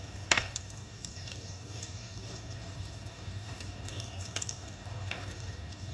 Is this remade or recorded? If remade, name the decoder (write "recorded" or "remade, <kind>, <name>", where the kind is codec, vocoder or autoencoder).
remade, codec, DAC